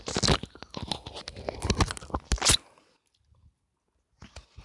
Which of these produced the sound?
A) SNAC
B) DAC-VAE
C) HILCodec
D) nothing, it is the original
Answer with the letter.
D